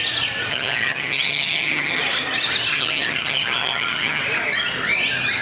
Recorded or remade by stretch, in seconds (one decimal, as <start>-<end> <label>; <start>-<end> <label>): 0.0-0.5 recorded; 0.5-2.0 remade; 2.0-2.7 recorded; 2.7-4.2 remade; 4.2-5.4 recorded